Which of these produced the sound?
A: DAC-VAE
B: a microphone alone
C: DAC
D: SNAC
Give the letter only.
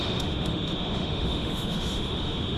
A